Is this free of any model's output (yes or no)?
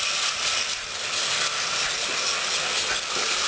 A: yes